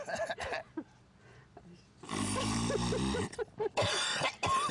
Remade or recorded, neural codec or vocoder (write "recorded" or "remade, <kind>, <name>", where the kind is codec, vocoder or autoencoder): remade, vocoder, BigVGAN v2